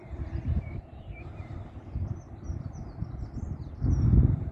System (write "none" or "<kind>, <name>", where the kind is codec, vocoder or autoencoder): vocoder, BigVGAN v2